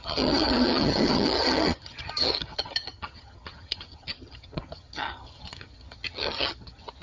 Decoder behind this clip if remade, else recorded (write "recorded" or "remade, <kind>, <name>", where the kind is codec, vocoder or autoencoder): remade, vocoder, HiFi-GAN